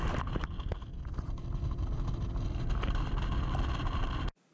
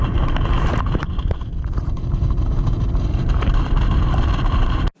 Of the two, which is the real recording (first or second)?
first